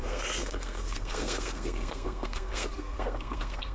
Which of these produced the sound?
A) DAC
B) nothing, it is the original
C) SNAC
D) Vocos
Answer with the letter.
C